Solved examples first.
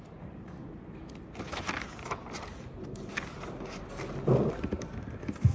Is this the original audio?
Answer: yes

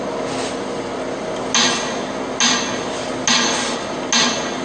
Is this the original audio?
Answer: yes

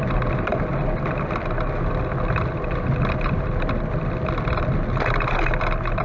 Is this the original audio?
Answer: yes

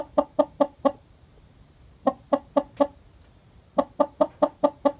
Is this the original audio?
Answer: yes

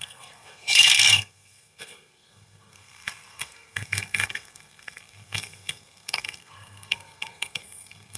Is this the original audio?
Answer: no